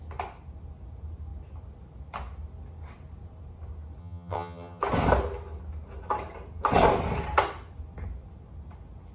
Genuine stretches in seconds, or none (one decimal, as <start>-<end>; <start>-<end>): 0.0-4.0; 4.8-9.1